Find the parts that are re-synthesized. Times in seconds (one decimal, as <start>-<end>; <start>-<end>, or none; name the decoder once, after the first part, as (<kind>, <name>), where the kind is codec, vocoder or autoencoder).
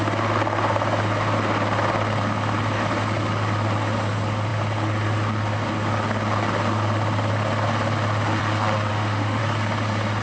8.9-9.4 (autoencoder, DAC-VAE)